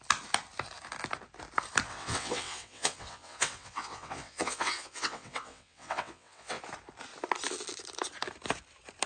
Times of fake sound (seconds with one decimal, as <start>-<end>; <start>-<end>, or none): 1.9-6.6

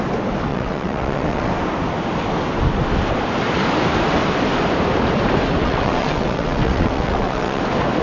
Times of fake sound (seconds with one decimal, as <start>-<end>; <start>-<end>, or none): 0.5-1.5; 5.6-7.6

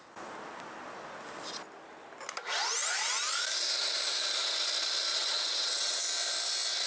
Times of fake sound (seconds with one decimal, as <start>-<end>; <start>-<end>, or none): 5.1-6.0